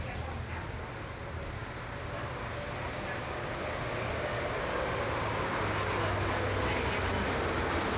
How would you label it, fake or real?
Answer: real